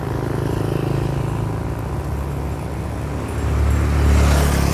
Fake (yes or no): no